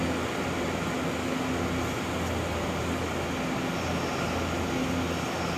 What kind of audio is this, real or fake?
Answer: real